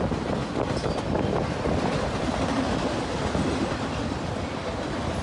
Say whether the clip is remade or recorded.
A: recorded